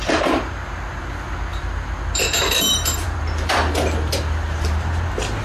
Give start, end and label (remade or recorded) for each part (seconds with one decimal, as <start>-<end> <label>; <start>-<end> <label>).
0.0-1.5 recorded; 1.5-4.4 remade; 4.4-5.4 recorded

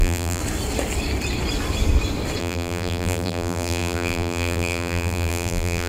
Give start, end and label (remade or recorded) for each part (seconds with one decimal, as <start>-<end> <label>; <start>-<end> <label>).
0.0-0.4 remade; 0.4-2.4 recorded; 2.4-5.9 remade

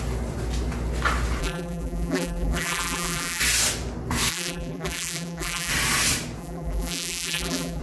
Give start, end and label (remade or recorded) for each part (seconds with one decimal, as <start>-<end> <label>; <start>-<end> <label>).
0.0-1.4 recorded; 1.4-3.4 remade; 3.4-4.3 recorded; 4.3-5.7 remade; 5.7-6.4 recorded; 6.4-7.8 remade